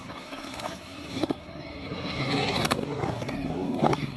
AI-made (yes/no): yes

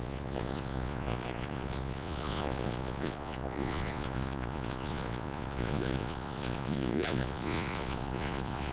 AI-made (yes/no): yes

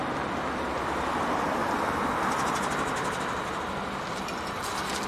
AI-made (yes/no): no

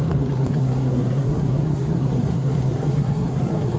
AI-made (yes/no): yes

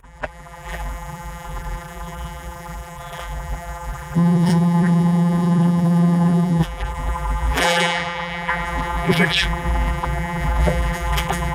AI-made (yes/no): yes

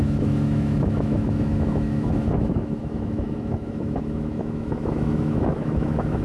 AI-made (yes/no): yes